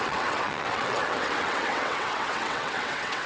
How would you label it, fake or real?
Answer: fake